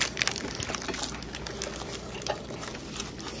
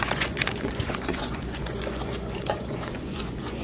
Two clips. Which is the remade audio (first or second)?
second